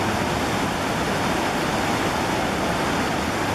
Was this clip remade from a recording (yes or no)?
no